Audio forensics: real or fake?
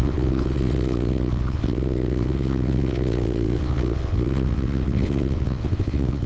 fake